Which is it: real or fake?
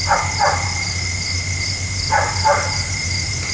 real